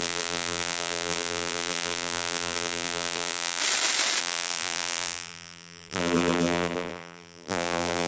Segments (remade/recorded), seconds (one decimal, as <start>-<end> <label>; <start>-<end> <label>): 0.0-3.6 remade; 3.6-4.2 recorded; 4.2-8.1 remade